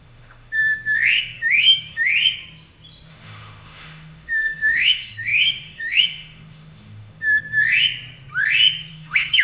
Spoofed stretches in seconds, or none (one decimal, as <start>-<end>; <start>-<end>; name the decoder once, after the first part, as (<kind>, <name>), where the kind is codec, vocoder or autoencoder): 0.0-0.6 (autoencoder, DAC-VAE); 1.2-2.1; 3.1-7.4; 8.9-9.4